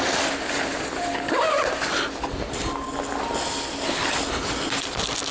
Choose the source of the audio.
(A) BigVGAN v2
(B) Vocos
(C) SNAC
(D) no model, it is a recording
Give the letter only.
D